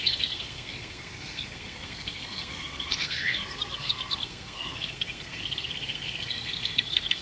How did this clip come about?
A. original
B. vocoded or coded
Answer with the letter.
B